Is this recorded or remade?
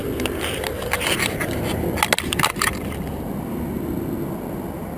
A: recorded